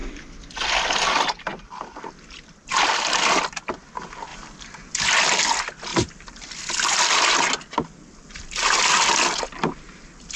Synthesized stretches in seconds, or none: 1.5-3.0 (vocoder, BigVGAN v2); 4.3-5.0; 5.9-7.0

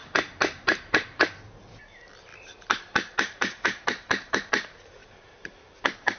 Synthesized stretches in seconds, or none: 0.0-1.4 (vocoder, BigVGAN v2); 2.3-4.5; 5.0-6.2

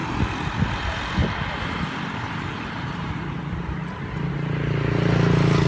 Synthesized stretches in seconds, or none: 1.2-4.3 (vocoder, BigVGAN v2)

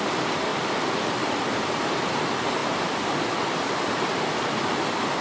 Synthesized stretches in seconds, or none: 0.5-1.5 (vocoder, BigVGAN v2); 2.6-3.1; 4.1-4.7

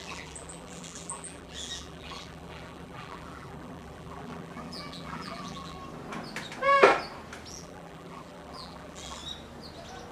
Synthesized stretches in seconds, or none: 0.0-5.8 (vocoder, BigVGAN v2); 7.5-9.2

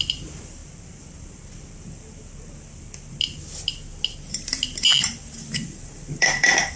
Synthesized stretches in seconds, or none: none

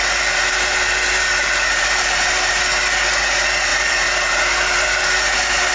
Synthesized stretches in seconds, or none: 0.0-2.6 (vocoder, BigVGAN v2); 3.7-5.7

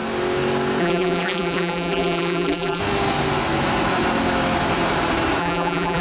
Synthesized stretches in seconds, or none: 0.8-2.8 (vocoder, BigVGAN v2); 5.4-6.0